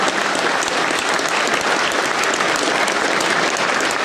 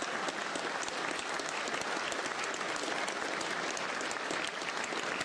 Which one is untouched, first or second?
second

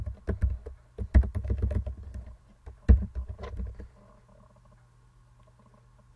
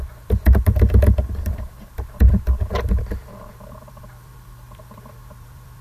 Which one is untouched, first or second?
first